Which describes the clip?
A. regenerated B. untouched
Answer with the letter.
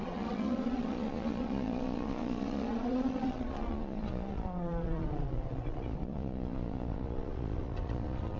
A